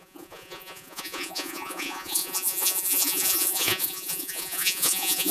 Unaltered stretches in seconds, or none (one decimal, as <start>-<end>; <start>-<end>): none